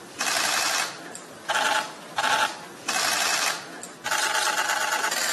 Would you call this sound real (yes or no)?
yes